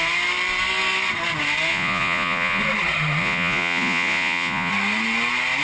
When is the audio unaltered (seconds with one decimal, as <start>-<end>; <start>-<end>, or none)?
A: 0.0-1.7; 2.6-3.2; 4.7-5.6